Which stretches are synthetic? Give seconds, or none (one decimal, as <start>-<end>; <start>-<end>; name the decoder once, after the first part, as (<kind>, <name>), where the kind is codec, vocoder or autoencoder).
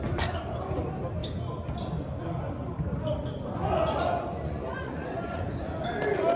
3.6-5.7 (vocoder, Vocos)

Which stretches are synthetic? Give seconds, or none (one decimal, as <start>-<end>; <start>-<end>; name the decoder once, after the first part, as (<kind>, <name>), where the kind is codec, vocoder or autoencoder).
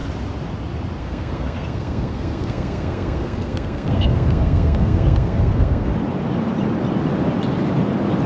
1.0-5.9 (codec, SNAC)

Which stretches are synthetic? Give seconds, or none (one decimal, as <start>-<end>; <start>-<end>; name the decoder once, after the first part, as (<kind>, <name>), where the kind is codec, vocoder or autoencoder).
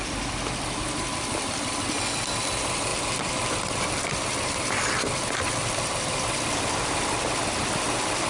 0.0-8.3 (vocoder, BigVGAN v2)